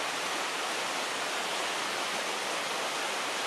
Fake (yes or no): no